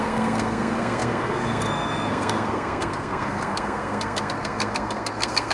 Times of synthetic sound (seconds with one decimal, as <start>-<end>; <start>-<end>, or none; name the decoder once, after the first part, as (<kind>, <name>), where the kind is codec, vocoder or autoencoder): 0.0-5.5 (codec, SNAC)